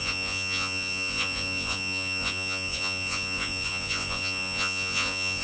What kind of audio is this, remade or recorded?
remade